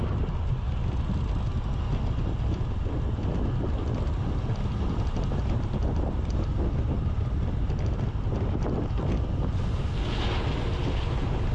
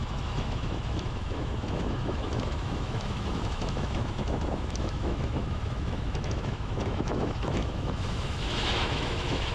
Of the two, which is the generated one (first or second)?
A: second